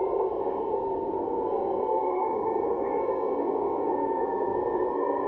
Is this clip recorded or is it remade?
remade